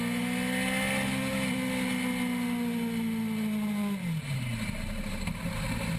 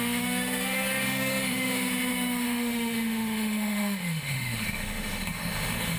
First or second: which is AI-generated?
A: second